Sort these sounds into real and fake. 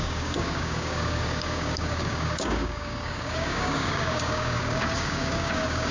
fake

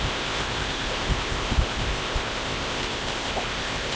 fake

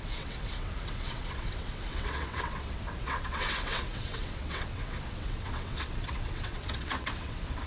fake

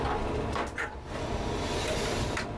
real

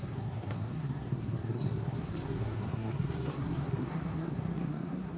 fake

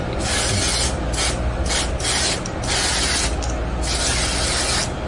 real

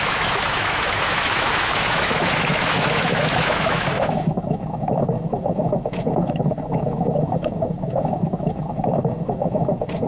fake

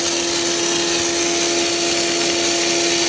real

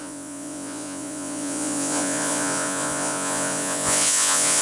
fake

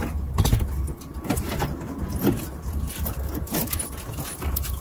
real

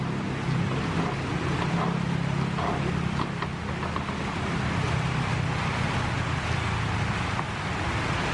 real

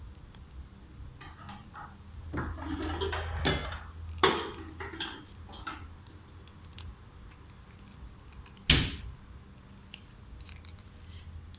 real